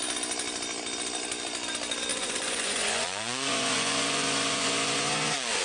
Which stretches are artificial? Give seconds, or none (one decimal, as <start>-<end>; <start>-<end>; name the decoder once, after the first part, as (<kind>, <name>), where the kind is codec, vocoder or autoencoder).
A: 2.1-5.6 (vocoder, Vocos)